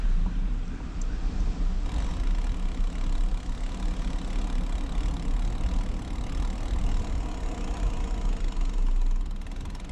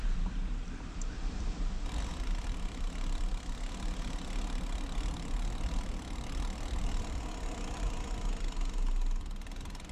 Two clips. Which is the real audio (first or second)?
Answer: first